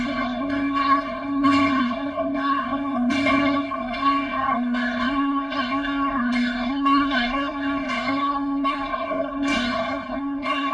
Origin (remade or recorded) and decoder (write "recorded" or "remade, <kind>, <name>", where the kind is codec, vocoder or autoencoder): remade, codec, SNAC